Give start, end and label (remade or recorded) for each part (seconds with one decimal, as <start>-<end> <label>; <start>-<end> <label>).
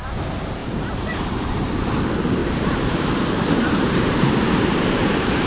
0.0-0.6 recorded; 0.6-1.6 remade; 1.6-2.4 recorded; 2.4-5.5 remade